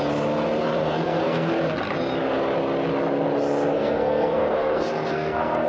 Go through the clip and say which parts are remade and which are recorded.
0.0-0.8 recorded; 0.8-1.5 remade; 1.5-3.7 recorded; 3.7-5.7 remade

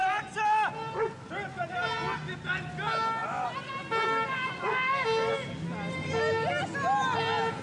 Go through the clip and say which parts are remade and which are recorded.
0.0-7.6 recorded

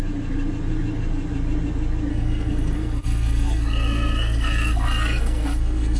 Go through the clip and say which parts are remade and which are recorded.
0.0-2.1 recorded; 2.1-6.0 remade

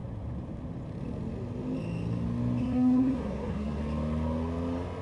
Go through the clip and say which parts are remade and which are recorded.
0.0-2.6 recorded; 2.6-3.8 remade; 3.8-5.0 recorded

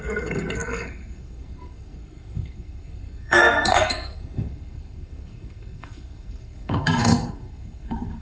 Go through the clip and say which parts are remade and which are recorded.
0.0-8.2 remade